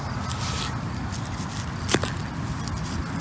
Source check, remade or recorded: recorded